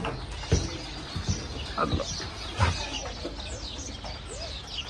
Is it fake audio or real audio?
real